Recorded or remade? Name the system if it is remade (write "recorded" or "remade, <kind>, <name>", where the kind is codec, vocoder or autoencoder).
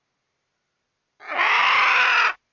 recorded